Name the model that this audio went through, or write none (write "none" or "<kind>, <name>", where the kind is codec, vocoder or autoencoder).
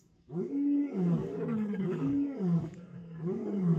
codec, DAC